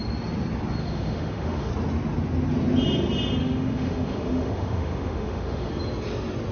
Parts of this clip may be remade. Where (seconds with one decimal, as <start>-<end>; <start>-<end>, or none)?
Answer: 0.8-1.7; 3.4-5.7